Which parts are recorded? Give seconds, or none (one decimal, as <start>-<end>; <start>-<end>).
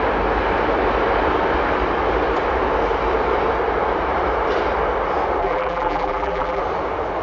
0.0-5.4; 6.6-7.2